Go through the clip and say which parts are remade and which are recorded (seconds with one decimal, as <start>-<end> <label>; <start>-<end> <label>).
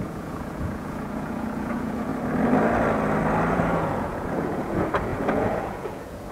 0.0-2.1 remade; 2.1-3.5 recorded; 3.5-6.3 remade